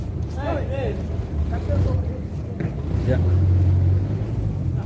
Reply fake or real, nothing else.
real